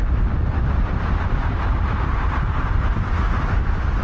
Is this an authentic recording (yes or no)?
yes